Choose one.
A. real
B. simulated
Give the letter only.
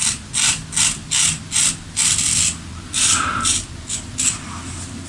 A